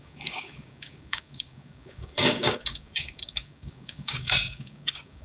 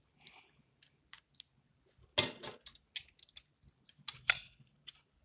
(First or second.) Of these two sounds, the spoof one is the first